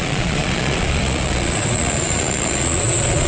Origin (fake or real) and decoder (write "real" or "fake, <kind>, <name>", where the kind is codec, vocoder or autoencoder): fake, vocoder, Vocos